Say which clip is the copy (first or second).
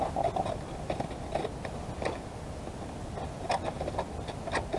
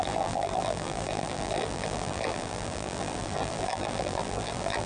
second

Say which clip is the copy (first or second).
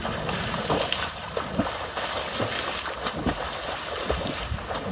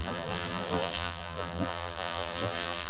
second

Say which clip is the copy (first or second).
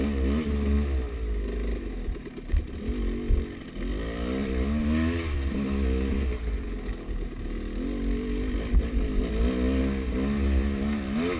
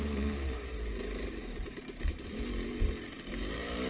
second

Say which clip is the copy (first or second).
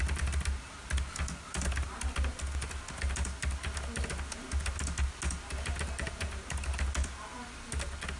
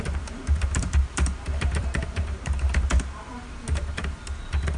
second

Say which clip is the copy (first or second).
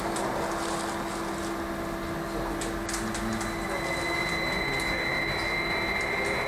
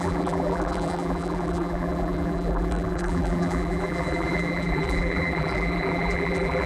second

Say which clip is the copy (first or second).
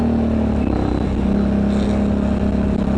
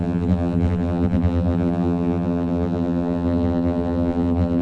second